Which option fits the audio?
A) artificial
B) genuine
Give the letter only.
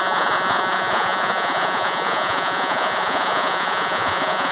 A